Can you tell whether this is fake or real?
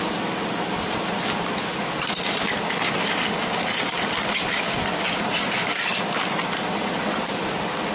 real